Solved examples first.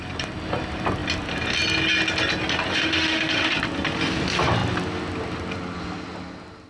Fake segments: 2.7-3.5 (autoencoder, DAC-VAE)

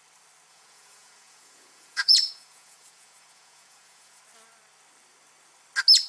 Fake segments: 0.5-4.2 (vocoder, Vocos)

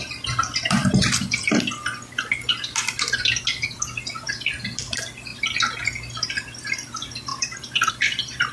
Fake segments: none

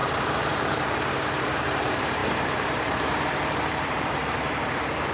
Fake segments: 0.0-5.1 (vocoder, BigVGAN v2)

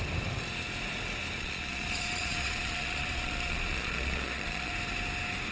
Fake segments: 1.4-4.7 (vocoder, Vocos)

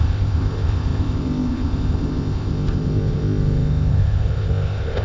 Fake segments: 0.0-5.0 (codec, ZipCodec)

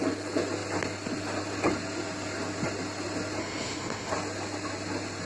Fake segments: 3.4-4.1 (autoencoder, DAC-VAE)

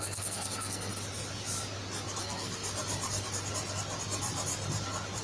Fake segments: 0.0-0.9 (codec, SNAC); 2.2-2.6